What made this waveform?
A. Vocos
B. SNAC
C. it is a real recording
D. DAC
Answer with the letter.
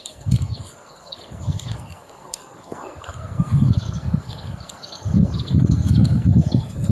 B